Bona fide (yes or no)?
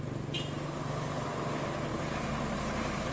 yes